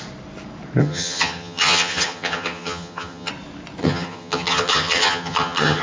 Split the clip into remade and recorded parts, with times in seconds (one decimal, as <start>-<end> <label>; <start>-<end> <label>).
0.0-0.8 recorded; 0.8-3.3 remade; 3.3-3.8 recorded; 3.8-5.8 remade